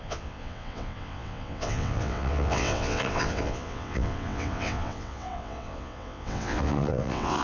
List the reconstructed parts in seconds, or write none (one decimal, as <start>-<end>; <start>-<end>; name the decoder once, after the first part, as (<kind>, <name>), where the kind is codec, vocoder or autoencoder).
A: 0.0-7.4 (vocoder, WaveNeXt)